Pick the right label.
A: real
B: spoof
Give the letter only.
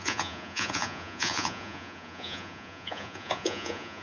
B